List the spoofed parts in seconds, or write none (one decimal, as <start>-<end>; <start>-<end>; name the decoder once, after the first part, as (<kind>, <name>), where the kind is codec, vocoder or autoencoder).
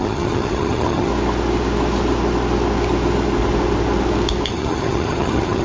0.0-1.1 (vocoder, HiFi-GAN); 4.5-5.6